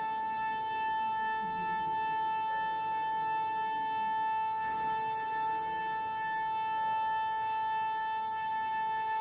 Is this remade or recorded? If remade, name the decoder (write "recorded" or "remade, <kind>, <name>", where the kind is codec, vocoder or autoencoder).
recorded